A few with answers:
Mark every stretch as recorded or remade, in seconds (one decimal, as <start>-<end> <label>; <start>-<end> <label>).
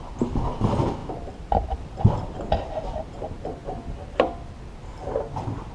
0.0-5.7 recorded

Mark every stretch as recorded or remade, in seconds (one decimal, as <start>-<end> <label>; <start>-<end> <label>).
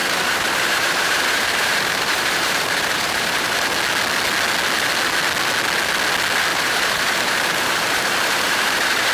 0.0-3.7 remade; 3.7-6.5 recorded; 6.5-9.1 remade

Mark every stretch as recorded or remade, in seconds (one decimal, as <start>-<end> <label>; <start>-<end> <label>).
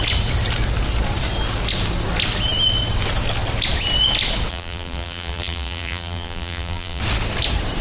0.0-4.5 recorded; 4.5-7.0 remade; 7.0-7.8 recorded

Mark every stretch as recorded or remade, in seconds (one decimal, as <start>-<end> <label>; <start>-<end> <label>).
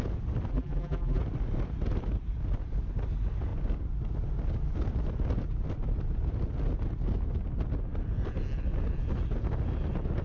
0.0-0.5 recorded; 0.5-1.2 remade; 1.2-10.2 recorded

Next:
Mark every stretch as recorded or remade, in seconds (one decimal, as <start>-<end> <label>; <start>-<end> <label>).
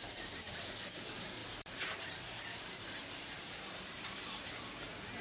0.0-1.4 recorded; 1.4-4.2 remade; 4.2-5.2 recorded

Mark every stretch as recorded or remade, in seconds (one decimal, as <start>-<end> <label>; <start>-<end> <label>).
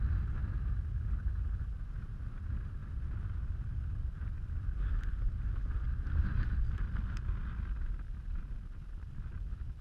0.0-9.8 recorded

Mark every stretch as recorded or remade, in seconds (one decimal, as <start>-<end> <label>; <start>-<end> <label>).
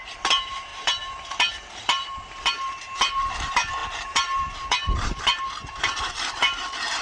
0.0-7.0 remade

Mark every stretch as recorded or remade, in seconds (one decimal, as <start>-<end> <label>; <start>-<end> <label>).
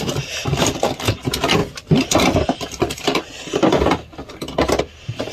0.0-5.3 recorded